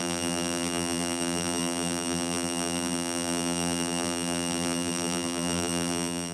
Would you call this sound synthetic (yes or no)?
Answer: yes